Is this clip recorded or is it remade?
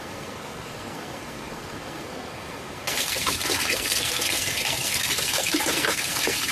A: remade